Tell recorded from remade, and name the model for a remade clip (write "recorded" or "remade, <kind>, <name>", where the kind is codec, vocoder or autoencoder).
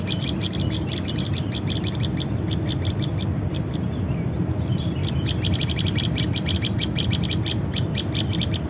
recorded